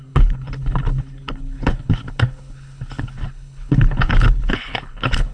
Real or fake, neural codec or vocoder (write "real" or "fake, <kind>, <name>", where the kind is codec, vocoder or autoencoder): fake, codec, HILCodec